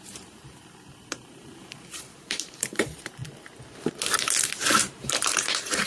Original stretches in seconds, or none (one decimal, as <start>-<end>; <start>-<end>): 3.2-4.8